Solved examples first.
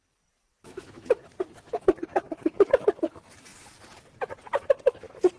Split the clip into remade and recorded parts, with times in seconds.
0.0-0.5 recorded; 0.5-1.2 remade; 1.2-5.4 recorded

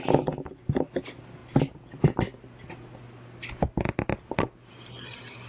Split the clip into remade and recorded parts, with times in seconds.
0.0-5.5 recorded

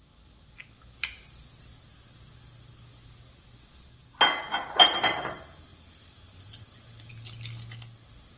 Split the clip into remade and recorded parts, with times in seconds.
0.0-5.7 recorded; 5.7-7.1 remade; 7.1-8.4 recorded

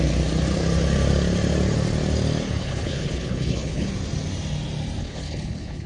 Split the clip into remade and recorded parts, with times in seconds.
0.0-2.6 recorded; 2.6-3.9 remade; 3.9-5.0 recorded; 5.0-5.9 remade

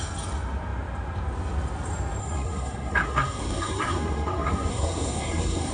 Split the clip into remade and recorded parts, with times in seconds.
0.0-2.2 recorded; 2.2-5.7 remade

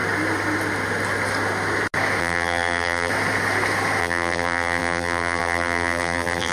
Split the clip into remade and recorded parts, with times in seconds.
0.0-2.2 recorded; 2.2-3.1 remade; 3.1-4.0 recorded; 4.0-6.5 remade

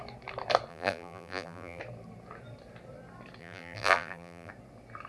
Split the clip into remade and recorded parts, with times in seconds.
0.0-0.7 recorded; 0.7-1.8 remade; 1.8-3.4 recorded; 3.4-4.5 remade; 4.5-5.1 recorded

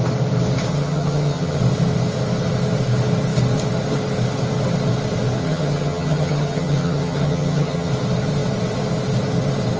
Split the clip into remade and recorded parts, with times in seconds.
0.0-0.7 recorded; 0.7-1.6 remade; 1.6-5.4 recorded; 5.4-7.9 remade; 7.9-9.8 recorded